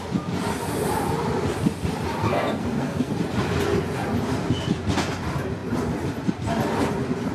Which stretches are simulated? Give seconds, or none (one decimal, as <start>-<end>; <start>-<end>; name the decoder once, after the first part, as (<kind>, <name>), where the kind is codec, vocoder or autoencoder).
2.2-3.1 (codec, SNAC)